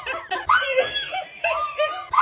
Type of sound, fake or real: real